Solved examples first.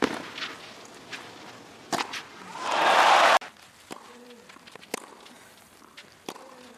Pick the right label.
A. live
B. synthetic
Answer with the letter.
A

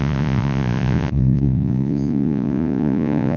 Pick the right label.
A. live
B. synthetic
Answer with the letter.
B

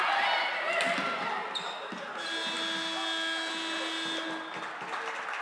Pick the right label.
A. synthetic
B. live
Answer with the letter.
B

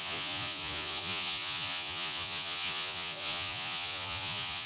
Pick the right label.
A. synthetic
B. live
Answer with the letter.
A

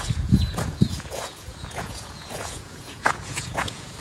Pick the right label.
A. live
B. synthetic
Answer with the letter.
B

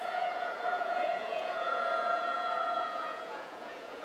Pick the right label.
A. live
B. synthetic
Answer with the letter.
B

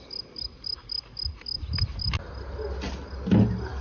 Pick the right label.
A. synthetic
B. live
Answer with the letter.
B